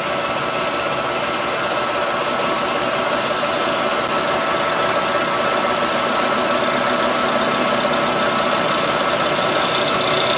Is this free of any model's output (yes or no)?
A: yes